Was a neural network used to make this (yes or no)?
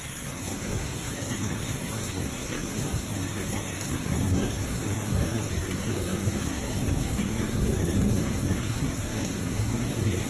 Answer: yes